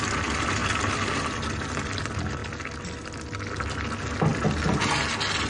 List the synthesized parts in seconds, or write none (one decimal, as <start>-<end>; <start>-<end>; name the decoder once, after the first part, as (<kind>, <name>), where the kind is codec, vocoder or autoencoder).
none